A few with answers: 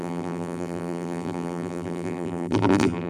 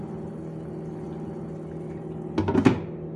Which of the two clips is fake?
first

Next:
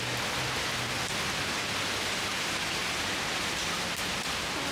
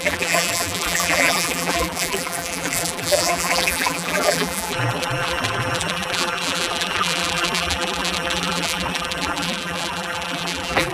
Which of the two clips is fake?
second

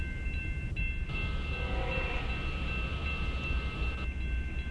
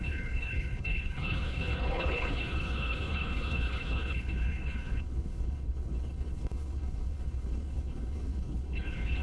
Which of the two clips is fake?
second